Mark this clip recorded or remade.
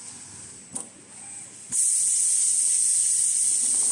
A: recorded